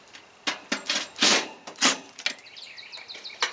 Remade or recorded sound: recorded